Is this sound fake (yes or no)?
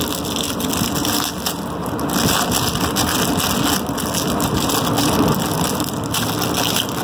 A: no